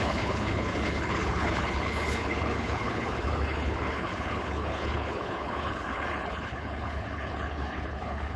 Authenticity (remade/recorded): remade